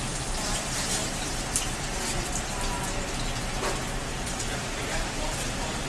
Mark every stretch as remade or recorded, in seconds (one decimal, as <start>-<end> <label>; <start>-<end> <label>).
0.0-1.0 remade; 1.0-4.2 recorded; 4.2-5.9 remade